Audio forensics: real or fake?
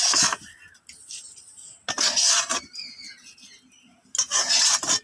real